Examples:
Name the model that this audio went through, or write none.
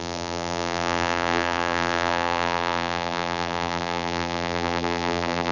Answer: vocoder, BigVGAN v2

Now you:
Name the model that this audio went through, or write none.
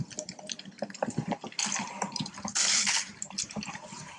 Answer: none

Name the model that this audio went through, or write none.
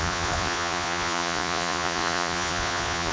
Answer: vocoder, Vocos